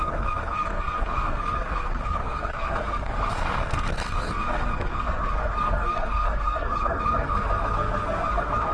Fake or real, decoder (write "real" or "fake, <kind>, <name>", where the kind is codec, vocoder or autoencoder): fake, codec, SNAC